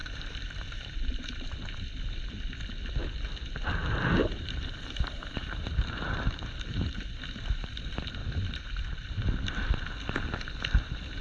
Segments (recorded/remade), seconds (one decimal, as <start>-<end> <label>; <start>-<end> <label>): 0.0-1.5 remade; 1.5-3.8 recorded; 3.8-7.1 remade; 7.1-11.2 recorded